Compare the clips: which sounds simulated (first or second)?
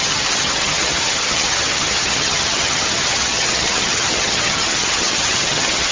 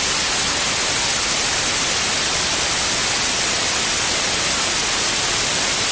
first